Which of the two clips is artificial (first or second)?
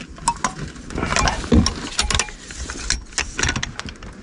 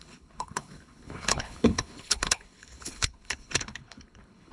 second